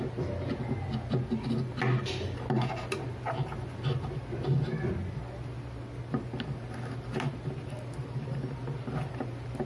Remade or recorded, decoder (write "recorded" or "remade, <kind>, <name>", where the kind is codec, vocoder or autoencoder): recorded